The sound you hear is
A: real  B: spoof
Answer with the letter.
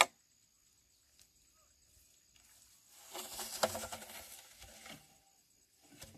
A